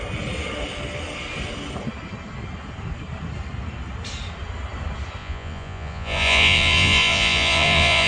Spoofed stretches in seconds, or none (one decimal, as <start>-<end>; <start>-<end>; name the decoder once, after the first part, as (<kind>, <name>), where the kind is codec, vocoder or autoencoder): 5.2-8.1 (vocoder, Vocos)